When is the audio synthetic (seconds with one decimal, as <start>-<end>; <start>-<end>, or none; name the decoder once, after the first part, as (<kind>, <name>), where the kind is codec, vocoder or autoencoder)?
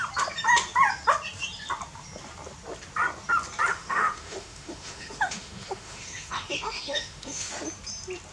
3.7-7.5 (autoencoder, DAC-VAE)